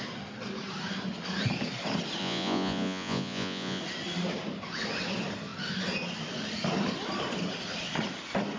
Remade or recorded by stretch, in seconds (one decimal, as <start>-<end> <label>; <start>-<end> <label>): 0.0-2.2 recorded; 2.2-3.8 remade; 3.8-8.6 recorded